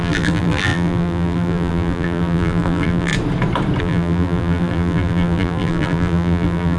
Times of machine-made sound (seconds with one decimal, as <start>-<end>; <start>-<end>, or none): 0.0-3.1; 3.8-6.8